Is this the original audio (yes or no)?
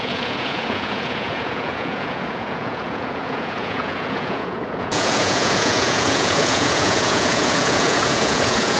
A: no